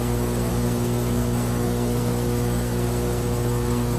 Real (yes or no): no